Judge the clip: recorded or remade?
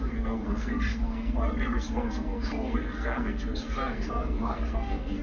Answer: remade